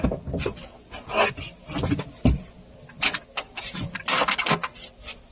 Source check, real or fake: real